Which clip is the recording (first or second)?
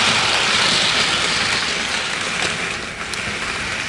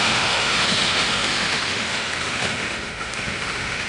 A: first